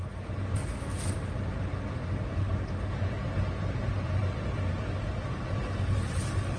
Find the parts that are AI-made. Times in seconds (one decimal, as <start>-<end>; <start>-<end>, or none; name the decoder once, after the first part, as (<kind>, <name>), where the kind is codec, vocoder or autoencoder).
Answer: none